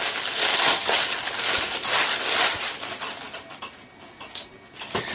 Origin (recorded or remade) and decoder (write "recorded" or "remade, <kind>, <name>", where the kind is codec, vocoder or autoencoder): recorded